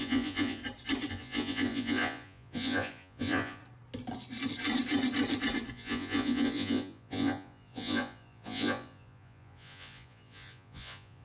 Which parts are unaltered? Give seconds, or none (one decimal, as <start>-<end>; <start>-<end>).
0.6-1.1; 3.6-5.7